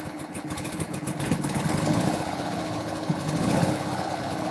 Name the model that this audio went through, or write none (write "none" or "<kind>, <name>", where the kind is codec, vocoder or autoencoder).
codec, HILCodec